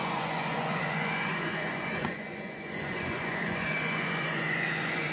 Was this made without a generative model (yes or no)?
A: no